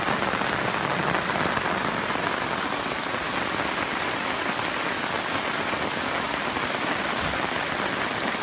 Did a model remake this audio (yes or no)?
no